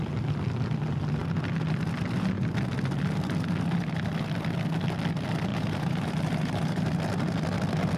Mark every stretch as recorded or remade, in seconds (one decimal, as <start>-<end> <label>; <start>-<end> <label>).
0.0-5.5 recorded; 5.5-6.9 remade; 6.9-8.0 recorded